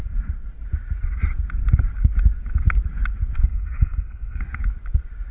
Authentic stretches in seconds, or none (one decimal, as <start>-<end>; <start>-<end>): 0.0-3.5; 4.4-5.3